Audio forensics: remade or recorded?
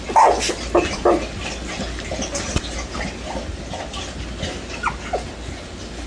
recorded